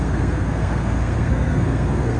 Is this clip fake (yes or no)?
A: yes